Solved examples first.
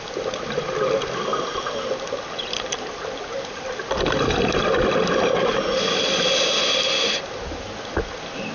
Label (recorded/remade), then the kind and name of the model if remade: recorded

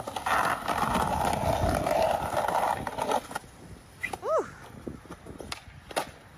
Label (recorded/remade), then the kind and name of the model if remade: recorded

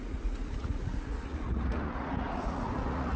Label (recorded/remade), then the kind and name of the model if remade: remade, vocoder, Vocos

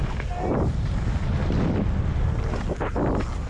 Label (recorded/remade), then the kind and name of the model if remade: recorded